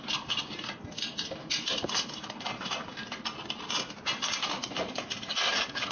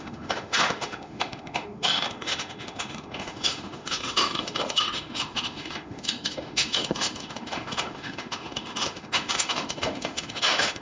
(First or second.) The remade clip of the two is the second